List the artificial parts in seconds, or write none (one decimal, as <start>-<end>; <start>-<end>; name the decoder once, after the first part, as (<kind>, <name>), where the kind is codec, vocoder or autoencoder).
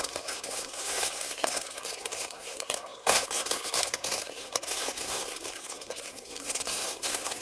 0.0-7.4 (codec, SNAC)